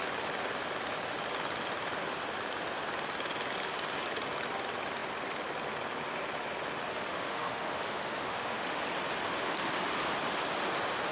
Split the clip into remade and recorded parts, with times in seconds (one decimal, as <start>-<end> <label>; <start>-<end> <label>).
0.0-6.9 recorded; 6.9-8.8 remade; 8.8-11.1 recorded